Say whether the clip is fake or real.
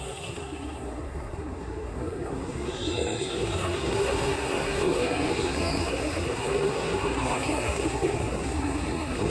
fake